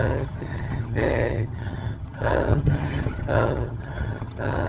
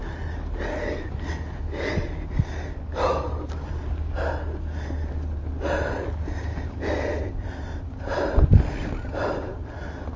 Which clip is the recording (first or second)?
second